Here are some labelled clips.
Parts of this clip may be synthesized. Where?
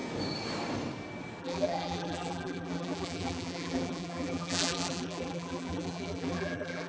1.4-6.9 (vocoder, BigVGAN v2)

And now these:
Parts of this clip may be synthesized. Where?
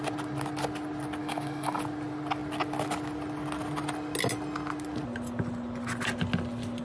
1.2-1.8 (codec, DAC)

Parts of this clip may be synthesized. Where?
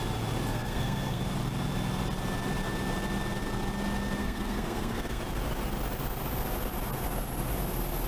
0.5-1.2 (codec, SNAC); 4.2-5.2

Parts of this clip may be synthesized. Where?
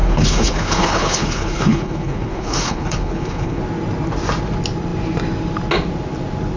0.0-3.6 (codec, HILCodec)